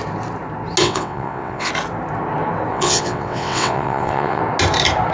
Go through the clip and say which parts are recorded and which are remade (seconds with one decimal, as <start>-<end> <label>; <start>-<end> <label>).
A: 0.0-0.8 recorded; 0.8-1.7 remade; 1.7-2.7 recorded; 2.7-4.4 remade; 4.4-5.1 recorded